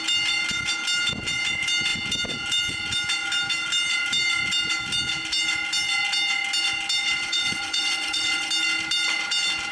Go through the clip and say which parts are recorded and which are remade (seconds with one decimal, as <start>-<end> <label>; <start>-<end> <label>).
0.0-7.0 recorded; 7.0-8.5 remade; 8.5-9.7 recorded